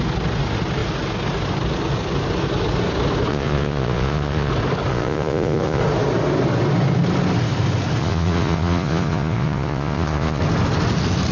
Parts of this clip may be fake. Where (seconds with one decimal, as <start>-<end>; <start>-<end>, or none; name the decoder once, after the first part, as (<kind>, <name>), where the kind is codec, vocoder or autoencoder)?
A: 3.3-4.5 (vocoder, Vocos); 4.9-5.8; 8.0-10.4